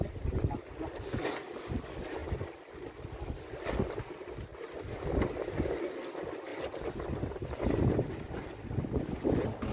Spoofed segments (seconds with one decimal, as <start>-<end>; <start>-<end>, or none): 4.5-5.7; 6.5-7.9